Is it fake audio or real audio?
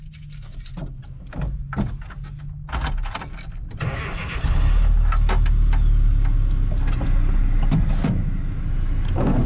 real